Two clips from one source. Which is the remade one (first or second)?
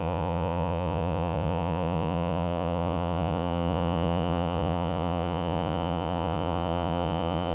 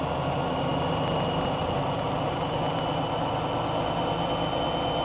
first